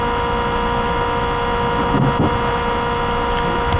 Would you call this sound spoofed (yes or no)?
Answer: no